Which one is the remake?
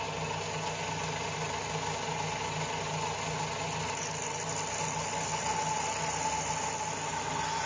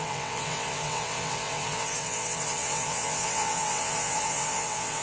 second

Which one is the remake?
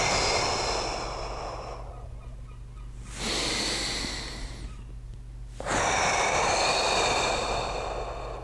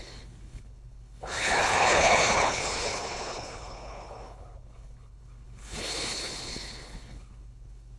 second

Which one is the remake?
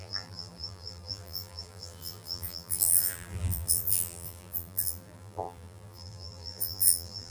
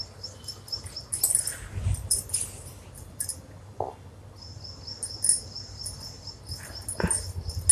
first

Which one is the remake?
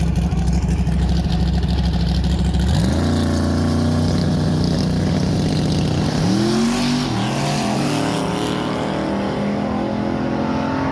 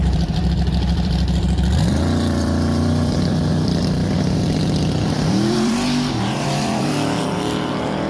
second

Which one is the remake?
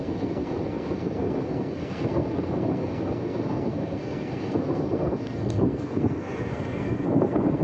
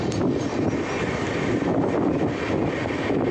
first